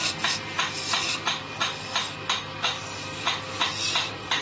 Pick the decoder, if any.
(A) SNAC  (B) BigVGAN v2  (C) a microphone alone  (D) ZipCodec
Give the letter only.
C